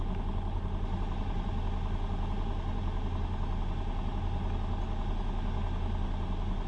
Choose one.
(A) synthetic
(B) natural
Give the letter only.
B